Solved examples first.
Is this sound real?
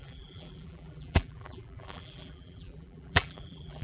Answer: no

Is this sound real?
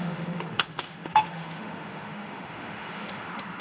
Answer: no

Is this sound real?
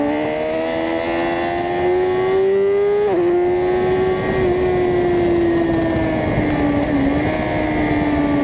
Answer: yes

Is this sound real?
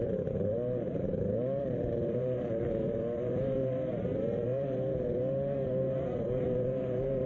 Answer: no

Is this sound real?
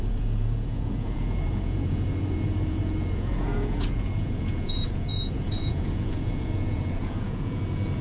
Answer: no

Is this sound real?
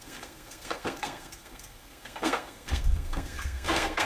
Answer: no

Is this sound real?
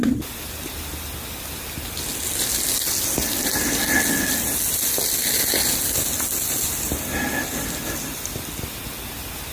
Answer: yes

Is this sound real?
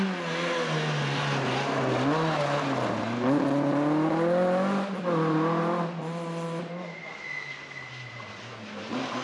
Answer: yes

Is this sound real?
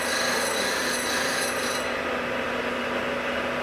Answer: yes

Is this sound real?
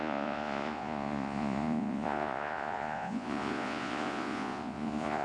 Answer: no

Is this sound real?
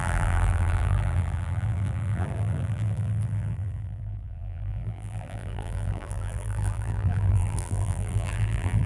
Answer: no